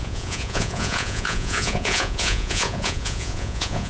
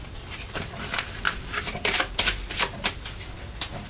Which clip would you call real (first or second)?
second